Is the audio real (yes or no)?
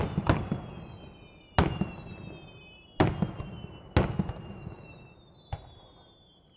yes